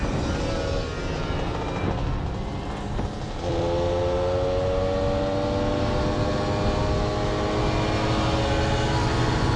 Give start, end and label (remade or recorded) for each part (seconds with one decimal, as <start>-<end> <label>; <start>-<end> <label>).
0.0-9.0 recorded; 9.0-9.6 remade